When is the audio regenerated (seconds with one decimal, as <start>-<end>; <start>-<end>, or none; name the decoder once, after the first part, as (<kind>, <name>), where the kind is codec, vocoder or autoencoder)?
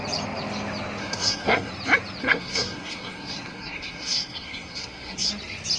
1.0-1.7 (codec, SNAC); 2.2-5.3